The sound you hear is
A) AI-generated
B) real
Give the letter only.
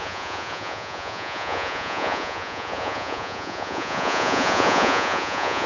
A